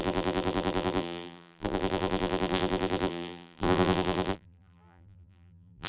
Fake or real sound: fake